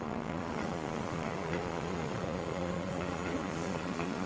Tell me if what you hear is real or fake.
fake